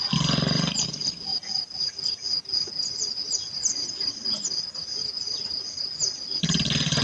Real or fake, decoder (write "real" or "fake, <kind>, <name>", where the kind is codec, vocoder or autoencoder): real